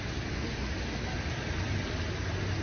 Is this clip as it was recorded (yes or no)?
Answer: yes